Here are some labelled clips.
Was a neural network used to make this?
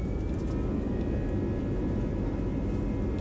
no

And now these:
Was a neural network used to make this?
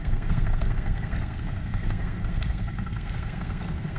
yes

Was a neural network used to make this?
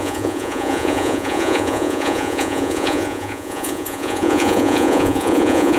yes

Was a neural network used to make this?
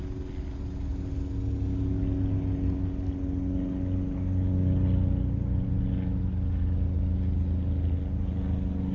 no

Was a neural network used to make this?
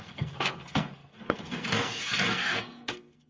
yes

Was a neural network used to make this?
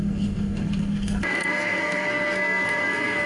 yes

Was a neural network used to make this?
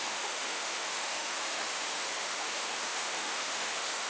yes